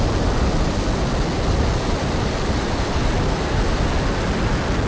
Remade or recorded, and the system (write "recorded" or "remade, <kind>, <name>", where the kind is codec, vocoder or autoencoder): recorded